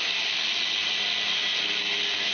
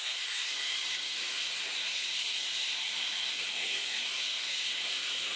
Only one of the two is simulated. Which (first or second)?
second